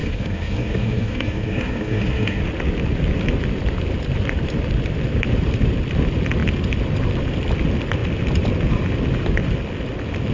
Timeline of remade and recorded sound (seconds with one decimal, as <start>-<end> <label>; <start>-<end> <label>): 0.0-2.4 remade; 2.4-10.3 recorded